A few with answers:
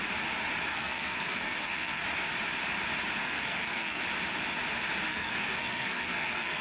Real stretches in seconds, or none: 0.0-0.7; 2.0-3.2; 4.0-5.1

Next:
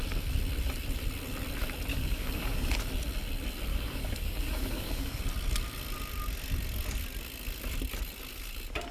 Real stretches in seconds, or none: 0.0-1.9; 2.7-3.7; 5.2-8.9